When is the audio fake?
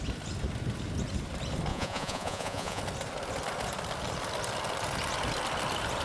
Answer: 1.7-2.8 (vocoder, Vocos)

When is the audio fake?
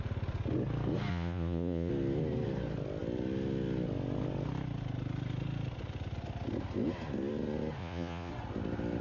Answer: 1.1-1.9 (vocoder, Vocos); 7.8-8.3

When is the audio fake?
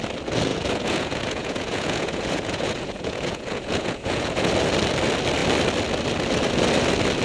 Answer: 0.5-4.5 (vocoder, Vocos)